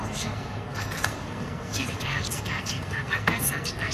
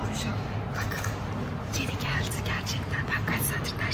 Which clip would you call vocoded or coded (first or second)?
first